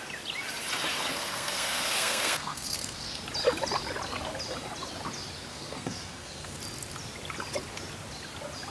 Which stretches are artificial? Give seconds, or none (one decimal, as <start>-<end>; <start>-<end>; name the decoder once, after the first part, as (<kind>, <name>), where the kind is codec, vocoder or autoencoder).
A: 1.1-3.2 (codec, SNAC); 5.5-6.6